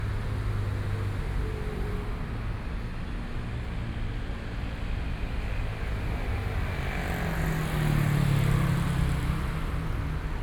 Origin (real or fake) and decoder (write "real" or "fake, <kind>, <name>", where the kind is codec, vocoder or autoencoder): real